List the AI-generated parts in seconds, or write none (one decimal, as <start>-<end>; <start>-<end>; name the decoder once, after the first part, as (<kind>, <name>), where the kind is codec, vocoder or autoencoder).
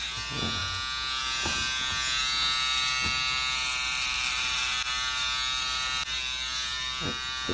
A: none